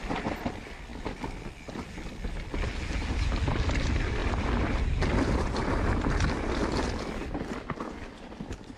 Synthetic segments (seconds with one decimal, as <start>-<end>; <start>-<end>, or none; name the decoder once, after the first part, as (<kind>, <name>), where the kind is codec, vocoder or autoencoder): 4.2-8.3 (vocoder, BigVGAN v2)